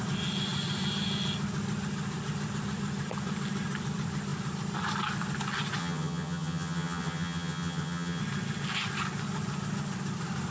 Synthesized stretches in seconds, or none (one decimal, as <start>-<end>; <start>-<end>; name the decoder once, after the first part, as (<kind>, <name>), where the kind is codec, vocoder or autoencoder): 5.8-8.2 (vocoder, HiFi-GAN)